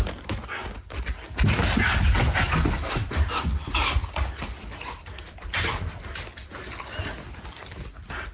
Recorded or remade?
recorded